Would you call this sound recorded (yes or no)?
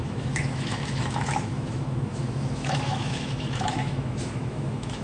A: no